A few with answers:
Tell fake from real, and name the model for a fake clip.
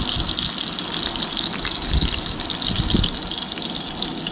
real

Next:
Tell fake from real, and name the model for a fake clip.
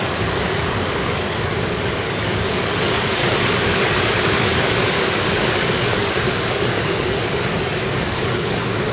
fake, codec, DAC